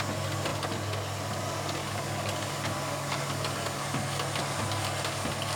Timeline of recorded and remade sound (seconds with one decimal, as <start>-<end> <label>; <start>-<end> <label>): 0.0-1.8 recorded; 1.8-3.8 remade; 3.8-5.6 recorded